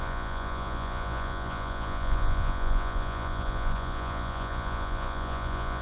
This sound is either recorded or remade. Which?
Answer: remade